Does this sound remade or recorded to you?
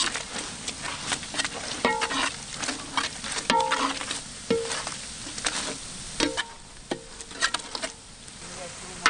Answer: recorded